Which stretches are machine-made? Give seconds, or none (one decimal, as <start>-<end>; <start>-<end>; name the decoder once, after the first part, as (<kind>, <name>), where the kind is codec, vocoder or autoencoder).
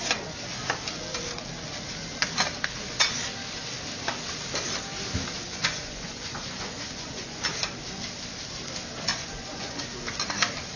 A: 5.5-7.4 (vocoder, Vocos); 9.1-10.0